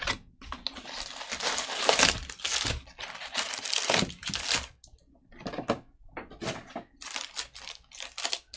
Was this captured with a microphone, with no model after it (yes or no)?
yes